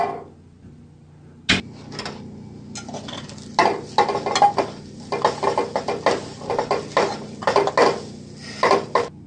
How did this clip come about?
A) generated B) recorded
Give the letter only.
B